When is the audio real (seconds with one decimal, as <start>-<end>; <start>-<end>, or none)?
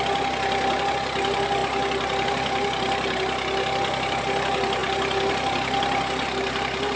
0.0-7.0